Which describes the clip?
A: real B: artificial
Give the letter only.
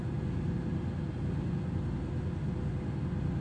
A